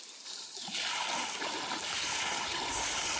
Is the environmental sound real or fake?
real